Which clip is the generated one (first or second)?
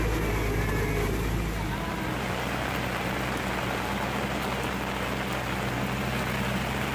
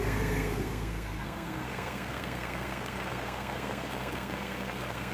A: second